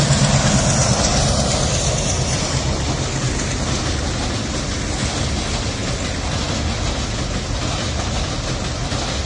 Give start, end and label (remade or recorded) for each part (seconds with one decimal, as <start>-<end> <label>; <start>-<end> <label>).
0.0-9.3 recorded